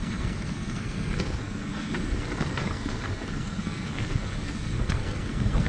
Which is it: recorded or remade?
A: remade